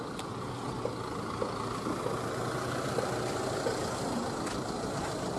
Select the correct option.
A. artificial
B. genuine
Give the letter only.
B